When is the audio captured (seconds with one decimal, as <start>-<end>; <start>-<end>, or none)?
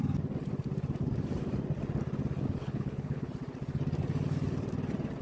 0.0-2.6; 3.3-5.2